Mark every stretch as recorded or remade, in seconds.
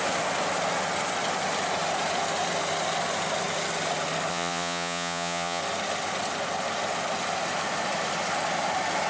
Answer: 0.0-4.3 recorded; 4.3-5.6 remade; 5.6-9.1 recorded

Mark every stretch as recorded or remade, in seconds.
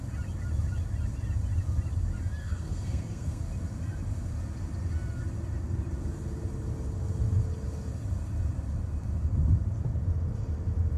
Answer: 0.0-2.4 recorded; 2.4-3.4 remade; 3.4-11.0 recorded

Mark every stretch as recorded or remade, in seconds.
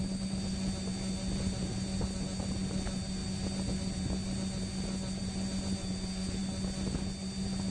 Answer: 0.0-5.8 recorded; 5.8-6.4 remade; 6.4-7.7 recorded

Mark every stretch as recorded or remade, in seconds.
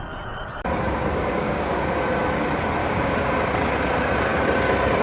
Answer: 0.0-1.1 recorded; 1.1-1.9 remade; 1.9-2.8 recorded; 2.8-3.3 remade; 3.3-5.0 recorded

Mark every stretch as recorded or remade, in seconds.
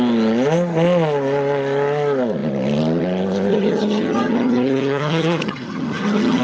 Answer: 0.0-3.5 recorded; 3.5-6.4 remade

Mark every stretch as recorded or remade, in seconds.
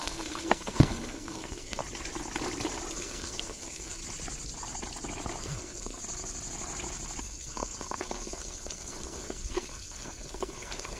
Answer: 0.0-1.8 remade; 1.8-2.9 recorded; 2.9-4.0 remade; 4.0-5.4 recorded; 5.4-6.0 remade; 6.0-7.2 recorded; 7.2-11.0 remade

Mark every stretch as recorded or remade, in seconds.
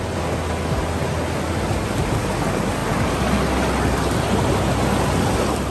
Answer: 0.0-5.7 recorded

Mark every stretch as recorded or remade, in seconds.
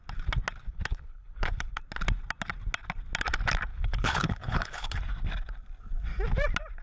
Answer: 0.0-0.6 recorded; 0.6-1.8 remade; 1.8-3.7 recorded; 3.7-5.0 remade; 5.0-6.8 recorded